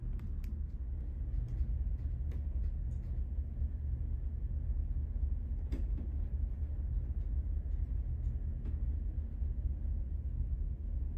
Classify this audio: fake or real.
real